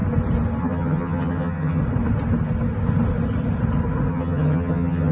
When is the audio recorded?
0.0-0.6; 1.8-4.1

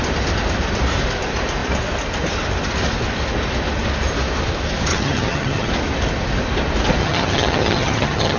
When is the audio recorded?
0.0-4.9; 5.7-7.0